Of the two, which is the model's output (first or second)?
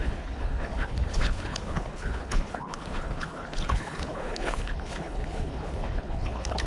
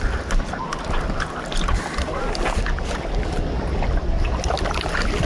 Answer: first